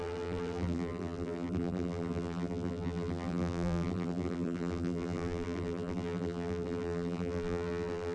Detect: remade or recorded remade